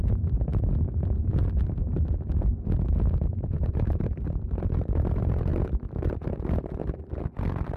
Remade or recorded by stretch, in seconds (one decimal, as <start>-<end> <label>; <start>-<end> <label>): 0.0-0.5 remade; 0.5-3.3 recorded; 3.3-6.8 remade; 6.8-7.8 recorded